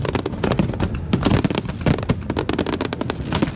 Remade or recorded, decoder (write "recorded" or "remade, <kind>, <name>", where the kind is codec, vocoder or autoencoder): recorded